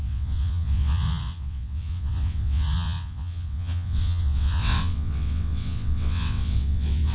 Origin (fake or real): fake